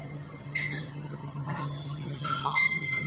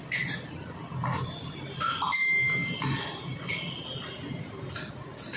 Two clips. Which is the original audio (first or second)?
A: second